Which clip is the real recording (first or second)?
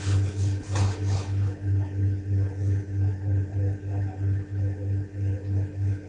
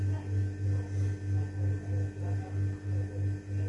second